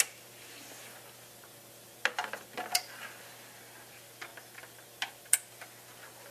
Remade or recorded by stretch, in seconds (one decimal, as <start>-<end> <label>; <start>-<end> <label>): 0.0-6.3 recorded